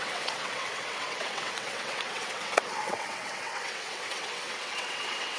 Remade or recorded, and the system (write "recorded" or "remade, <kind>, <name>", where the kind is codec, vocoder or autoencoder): remade, vocoder, WaveNeXt